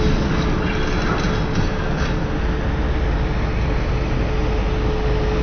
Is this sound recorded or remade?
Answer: recorded